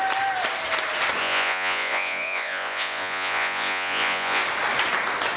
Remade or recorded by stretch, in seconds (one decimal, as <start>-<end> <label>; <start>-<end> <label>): 0.0-1.2 recorded; 1.2-4.4 remade; 4.4-5.4 recorded